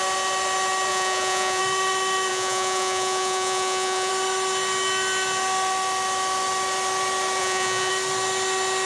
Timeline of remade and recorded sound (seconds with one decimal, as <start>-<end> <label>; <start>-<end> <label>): 0.0-0.9 recorded; 0.9-1.6 remade; 1.6-2.3 recorded; 2.3-4.1 remade; 4.1-7.4 recorded; 7.4-7.9 remade; 7.9-8.9 recorded